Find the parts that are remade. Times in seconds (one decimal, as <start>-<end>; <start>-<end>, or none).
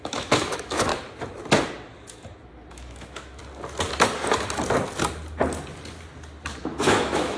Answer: 0.0-0.9; 2.7-3.4; 6.6-7.4